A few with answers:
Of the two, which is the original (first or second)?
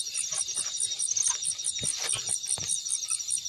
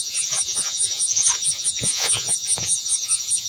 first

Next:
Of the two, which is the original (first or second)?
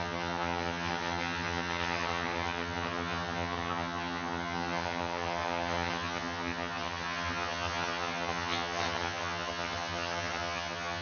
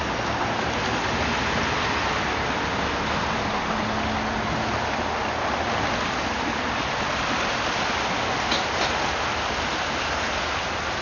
second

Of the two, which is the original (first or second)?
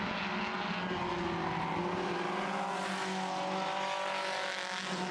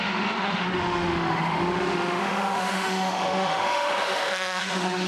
first